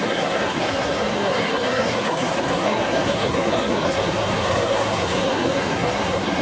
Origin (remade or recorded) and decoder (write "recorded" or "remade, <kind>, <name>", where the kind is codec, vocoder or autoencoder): remade, codec, SNAC